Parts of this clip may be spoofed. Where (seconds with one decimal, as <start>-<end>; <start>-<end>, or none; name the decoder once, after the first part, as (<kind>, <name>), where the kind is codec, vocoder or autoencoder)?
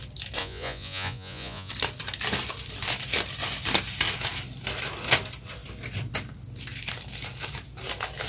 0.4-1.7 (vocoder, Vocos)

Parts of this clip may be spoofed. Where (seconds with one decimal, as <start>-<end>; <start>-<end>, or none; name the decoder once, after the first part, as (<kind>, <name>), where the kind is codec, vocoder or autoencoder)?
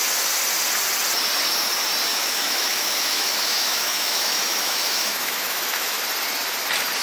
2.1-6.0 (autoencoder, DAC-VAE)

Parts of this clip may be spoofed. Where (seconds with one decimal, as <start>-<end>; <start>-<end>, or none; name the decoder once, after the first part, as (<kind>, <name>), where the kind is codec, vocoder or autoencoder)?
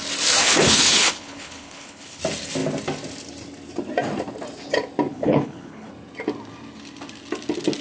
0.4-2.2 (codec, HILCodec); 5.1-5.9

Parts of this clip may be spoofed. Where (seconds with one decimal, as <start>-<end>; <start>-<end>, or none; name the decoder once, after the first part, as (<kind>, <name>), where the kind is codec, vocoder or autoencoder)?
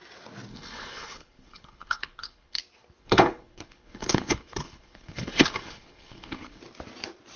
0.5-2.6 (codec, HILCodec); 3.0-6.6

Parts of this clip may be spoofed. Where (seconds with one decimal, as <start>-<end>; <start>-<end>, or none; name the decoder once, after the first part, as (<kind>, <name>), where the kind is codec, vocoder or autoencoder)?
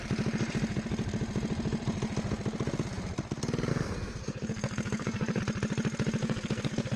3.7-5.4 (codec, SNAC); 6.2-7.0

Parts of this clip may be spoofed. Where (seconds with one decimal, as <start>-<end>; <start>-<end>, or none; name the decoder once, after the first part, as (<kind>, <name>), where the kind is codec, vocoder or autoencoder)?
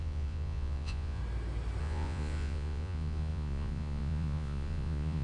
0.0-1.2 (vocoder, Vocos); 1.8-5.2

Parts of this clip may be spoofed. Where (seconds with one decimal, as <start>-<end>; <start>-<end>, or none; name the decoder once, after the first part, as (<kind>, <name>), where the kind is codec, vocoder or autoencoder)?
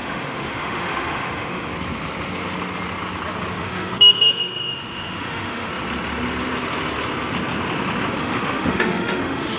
0.0-1.7 (autoencoder, DAC-VAE); 3.5-5.7; 8.2-9.6